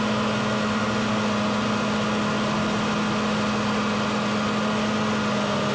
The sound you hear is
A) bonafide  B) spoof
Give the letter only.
A